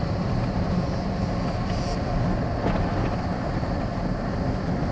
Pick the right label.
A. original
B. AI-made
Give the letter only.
A